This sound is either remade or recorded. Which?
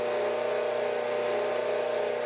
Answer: recorded